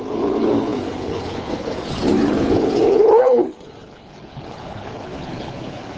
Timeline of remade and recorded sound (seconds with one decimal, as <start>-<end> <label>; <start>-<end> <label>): 0.0-6.0 remade